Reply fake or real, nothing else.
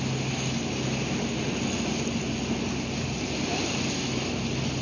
real